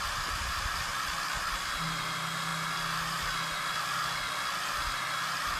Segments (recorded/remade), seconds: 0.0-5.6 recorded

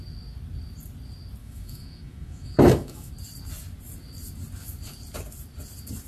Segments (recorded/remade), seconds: 0.0-1.4 recorded; 1.4-3.1 remade; 3.1-6.1 recorded

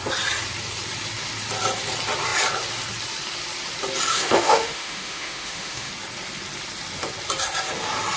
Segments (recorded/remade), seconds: 0.0-4.1 recorded; 4.1-5.9 remade; 5.9-8.2 recorded